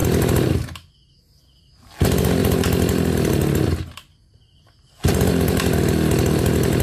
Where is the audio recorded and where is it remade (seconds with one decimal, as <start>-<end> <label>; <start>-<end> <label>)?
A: 0.0-0.6 remade; 0.6-2.4 recorded; 2.4-3.3 remade; 3.3-6.8 recorded